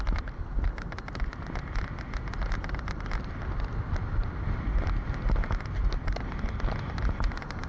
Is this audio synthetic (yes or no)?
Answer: no